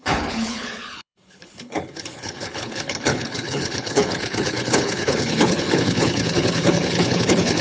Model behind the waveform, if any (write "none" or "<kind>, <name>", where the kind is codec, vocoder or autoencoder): codec, HILCodec